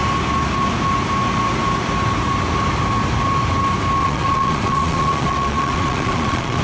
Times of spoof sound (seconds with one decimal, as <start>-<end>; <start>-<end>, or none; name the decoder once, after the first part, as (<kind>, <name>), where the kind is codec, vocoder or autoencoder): 4.0-6.6 (vocoder, Vocos)